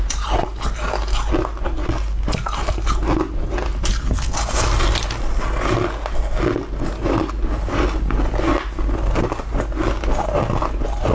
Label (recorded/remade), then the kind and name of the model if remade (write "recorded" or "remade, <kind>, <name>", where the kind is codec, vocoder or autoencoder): recorded